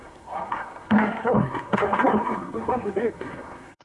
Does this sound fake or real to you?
fake